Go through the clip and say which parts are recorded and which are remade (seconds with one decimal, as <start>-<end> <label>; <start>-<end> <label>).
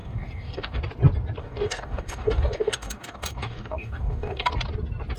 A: 0.0-0.8 remade; 0.8-1.4 recorded; 1.4-4.5 remade; 4.5-5.2 recorded